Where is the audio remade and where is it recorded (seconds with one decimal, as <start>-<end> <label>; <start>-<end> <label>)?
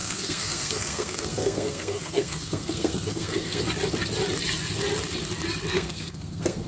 0.0-3.6 remade; 3.6-5.7 recorded; 5.7-6.7 remade